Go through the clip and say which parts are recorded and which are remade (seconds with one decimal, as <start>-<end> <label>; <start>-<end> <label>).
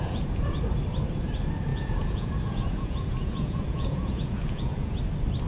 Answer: 0.0-0.6 remade; 0.6-1.7 recorded; 1.7-5.0 remade; 5.0-5.5 recorded